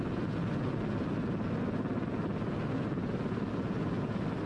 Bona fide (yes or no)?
yes